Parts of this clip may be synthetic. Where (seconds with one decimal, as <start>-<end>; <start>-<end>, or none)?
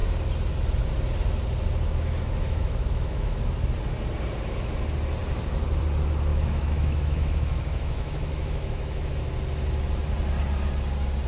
1.9-3.4; 6.3-9.1